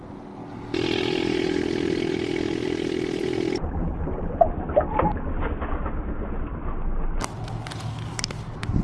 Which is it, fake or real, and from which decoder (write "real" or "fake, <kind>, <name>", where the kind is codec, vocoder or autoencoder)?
real